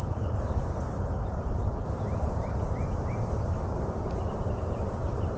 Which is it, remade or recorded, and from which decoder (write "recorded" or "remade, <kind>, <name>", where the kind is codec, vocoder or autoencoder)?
remade, vocoder, BigVGAN v2